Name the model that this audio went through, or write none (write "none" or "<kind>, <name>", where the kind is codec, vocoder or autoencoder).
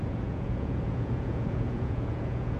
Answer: vocoder, Vocos